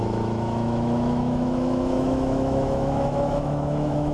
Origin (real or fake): fake